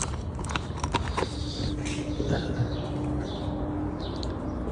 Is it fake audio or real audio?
real